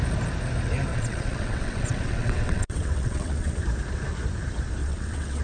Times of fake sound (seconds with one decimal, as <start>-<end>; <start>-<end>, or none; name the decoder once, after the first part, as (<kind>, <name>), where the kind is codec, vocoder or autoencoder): 0.9-3.6 (vocoder, WaveNeXt); 4.8-5.4